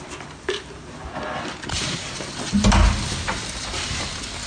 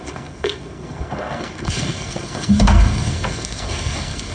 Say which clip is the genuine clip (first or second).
first